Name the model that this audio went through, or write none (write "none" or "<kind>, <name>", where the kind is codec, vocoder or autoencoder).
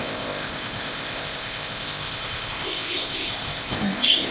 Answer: codec, ZipCodec